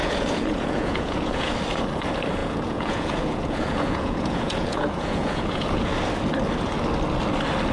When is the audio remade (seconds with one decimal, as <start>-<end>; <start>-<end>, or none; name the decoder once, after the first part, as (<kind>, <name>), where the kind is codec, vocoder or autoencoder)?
0.0-1.5 (vocoder, Vocos); 2.4-5.9